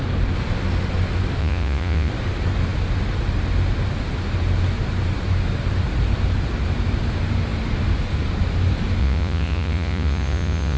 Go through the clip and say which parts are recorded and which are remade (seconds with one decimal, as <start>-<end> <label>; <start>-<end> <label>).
0.0-1.4 recorded; 1.4-2.1 remade; 2.1-9.0 recorded; 9.0-10.8 remade